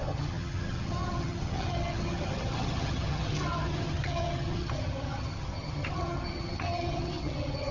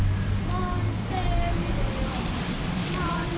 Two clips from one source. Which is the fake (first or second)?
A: first